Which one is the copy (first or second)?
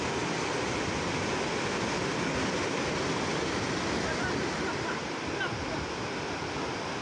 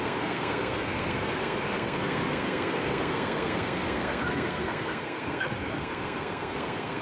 second